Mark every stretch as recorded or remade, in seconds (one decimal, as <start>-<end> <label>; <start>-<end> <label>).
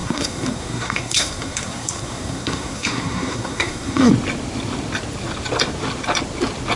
0.0-4.1 remade; 4.1-6.8 recorded